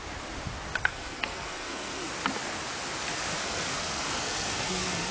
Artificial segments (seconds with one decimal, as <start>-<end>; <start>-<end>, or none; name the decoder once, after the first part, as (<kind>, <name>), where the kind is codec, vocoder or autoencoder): 0.8-2.1 (codec, SNAC); 3.4-5.1